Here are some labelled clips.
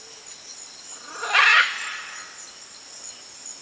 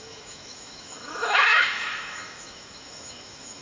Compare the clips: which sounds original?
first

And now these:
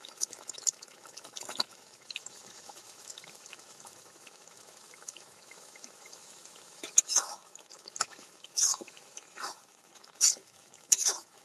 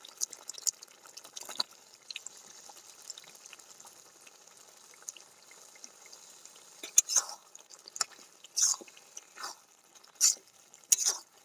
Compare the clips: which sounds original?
second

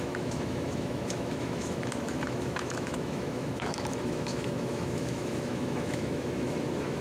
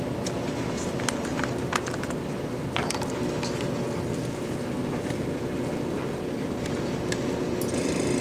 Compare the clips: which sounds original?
second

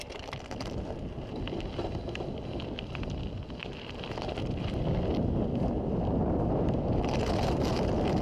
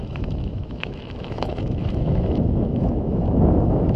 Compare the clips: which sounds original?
first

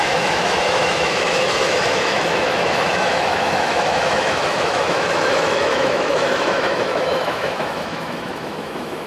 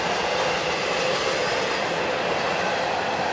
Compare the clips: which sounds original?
second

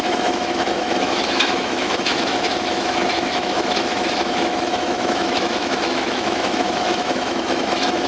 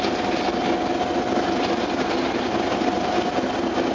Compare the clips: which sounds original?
second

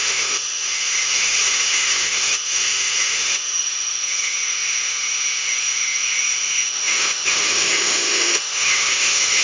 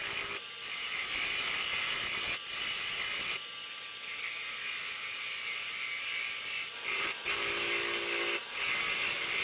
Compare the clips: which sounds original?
second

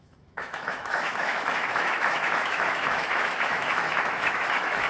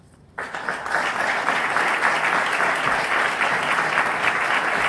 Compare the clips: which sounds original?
second